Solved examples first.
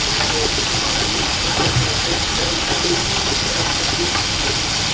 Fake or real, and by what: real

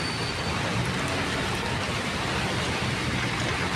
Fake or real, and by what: real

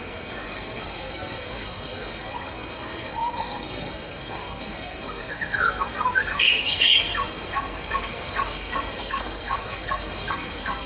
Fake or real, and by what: fake, codec, SNAC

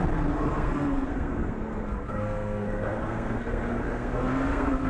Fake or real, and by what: fake, codec, SNAC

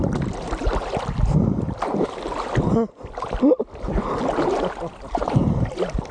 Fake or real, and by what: real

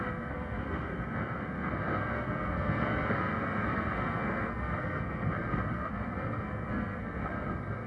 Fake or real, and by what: fake, codec, SNAC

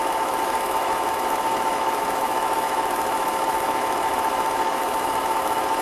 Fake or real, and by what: fake, autoencoder, DAC-VAE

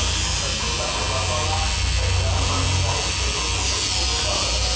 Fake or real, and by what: real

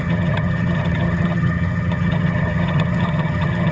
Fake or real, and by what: fake, vocoder, HiFi-GAN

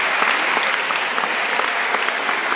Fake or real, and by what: real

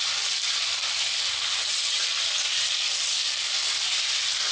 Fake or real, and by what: real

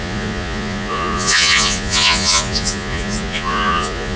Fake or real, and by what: fake, vocoder, Vocos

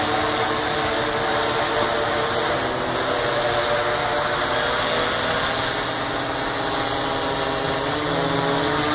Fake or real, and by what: real